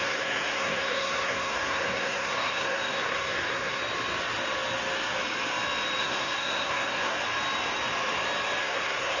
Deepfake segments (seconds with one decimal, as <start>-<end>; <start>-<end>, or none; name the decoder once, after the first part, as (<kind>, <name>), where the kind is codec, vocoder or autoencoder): 0.0-3.8 (codec, SNAC); 6.0-7.2; 8.6-9.2